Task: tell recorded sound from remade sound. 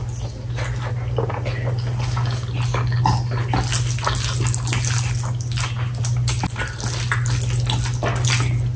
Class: recorded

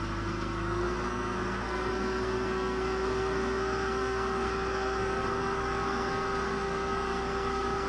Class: remade